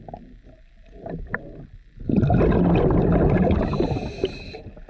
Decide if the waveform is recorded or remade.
recorded